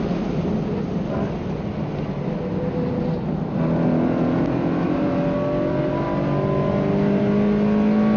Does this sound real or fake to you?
real